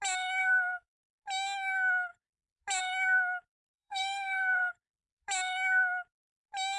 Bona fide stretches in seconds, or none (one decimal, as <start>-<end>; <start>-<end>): 0.0-0.4; 1.0-3.7; 4.7-6.8